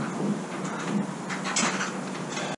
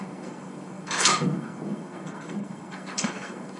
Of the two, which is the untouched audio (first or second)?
first